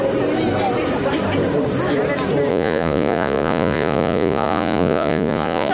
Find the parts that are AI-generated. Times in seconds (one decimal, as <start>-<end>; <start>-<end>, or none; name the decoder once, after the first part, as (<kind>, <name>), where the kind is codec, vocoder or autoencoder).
2.5-5.7 (vocoder, Vocos)